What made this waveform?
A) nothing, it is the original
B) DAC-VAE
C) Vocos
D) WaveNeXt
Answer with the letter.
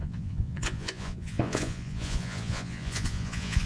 C